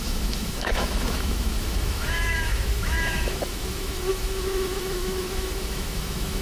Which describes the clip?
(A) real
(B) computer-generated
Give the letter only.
B